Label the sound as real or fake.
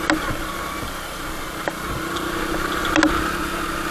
real